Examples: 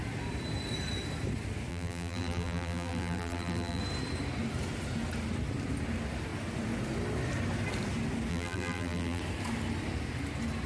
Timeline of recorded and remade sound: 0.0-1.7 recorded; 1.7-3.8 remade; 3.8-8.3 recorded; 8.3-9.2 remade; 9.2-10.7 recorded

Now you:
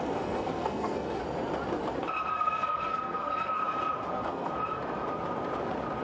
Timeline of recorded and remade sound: 0.0-1.2 remade; 1.2-2.3 recorded; 2.3-3.6 remade; 3.6-4.1 recorded; 4.1-4.5 remade; 4.5-6.0 recorded

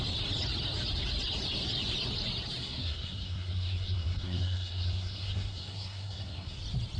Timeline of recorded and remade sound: 0.0-2.6 recorded; 2.6-6.6 remade; 6.6-7.0 recorded

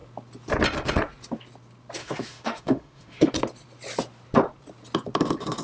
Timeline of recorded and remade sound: 0.0-2.0 recorded; 2.0-3.3 remade; 3.3-5.6 recorded

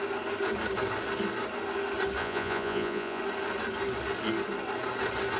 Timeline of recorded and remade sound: 0.0-2.2 recorded; 2.2-3.2 remade; 3.2-5.4 recorded

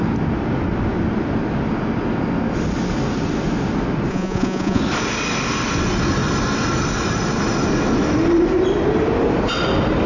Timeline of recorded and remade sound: 0.0-4.1 recorded; 4.1-4.8 remade; 4.8-10.1 recorded

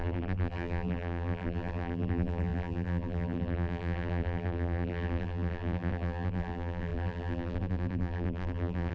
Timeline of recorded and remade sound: 0.0-8.9 remade